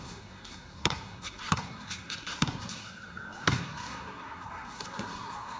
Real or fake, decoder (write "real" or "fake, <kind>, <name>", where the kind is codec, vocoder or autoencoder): fake, codec, SNAC